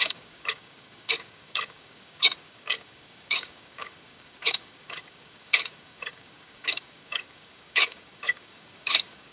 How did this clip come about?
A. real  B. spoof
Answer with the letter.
B